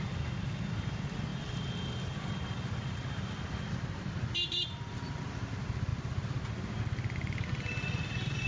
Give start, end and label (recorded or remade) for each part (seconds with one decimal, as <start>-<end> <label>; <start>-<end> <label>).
0.0-1.3 recorded; 1.3-5.2 remade; 5.2-5.9 recorded; 5.9-6.4 remade; 6.4-8.5 recorded